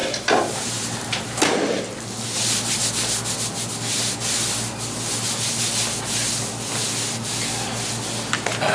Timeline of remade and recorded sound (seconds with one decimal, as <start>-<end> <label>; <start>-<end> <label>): 0.0-1.8 remade; 1.8-8.7 recorded